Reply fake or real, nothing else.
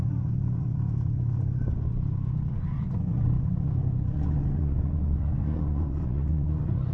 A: fake